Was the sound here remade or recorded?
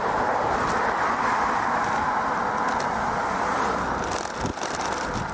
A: recorded